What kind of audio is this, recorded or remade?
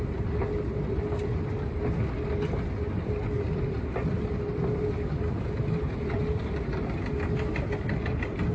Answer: recorded